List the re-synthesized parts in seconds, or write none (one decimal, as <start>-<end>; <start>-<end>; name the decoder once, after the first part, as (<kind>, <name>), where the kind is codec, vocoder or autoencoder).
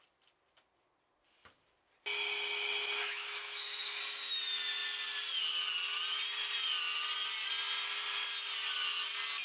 3.0-4.0 (autoencoder, DAC-VAE)